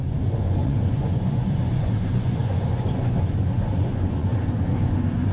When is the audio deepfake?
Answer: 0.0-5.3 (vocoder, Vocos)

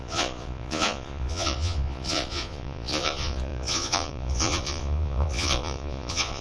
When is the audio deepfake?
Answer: 0.0-6.4 (vocoder, Vocos)

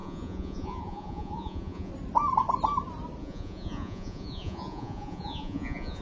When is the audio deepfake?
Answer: 0.0-1.9 (vocoder, Vocos); 3.2-6.0

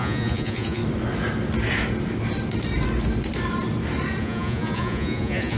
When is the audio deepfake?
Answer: 0.0-0.8 (vocoder, Vocos); 4.2-5.6